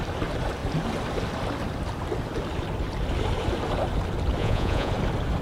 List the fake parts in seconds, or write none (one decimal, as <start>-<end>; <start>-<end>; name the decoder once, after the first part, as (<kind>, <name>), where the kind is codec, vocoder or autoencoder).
4.4-4.9 (vocoder, Vocos)